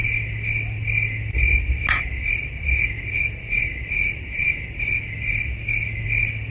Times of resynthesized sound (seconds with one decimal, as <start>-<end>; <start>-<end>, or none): none